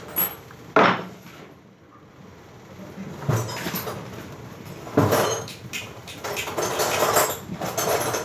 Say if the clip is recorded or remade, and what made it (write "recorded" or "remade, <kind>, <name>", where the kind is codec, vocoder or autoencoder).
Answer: recorded